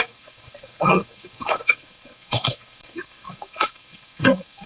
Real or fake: fake